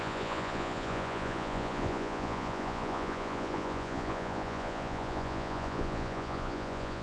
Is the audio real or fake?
fake